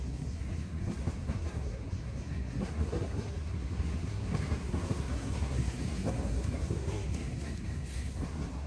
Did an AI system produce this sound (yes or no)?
yes